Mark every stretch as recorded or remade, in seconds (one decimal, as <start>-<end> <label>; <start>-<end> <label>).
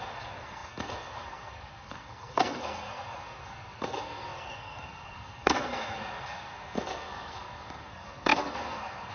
0.0-9.1 remade